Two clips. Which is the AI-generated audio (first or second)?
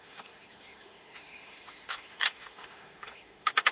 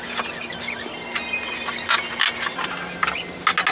first